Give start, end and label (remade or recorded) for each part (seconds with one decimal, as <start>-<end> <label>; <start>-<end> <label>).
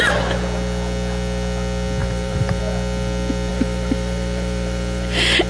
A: 0.0-2.0 recorded; 2.0-2.6 remade; 2.6-3.5 recorded; 3.5-5.5 remade